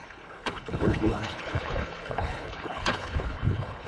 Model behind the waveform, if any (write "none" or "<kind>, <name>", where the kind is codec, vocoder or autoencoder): codec, HILCodec